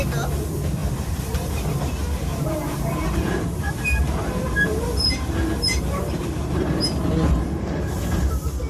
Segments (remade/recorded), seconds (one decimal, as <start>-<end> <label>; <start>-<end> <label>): 0.0-0.8 recorded; 0.8-1.5 remade; 1.5-2.3 recorded; 2.3-6.8 remade; 6.8-8.7 recorded